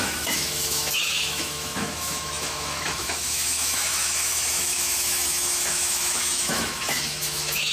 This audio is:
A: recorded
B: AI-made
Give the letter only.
B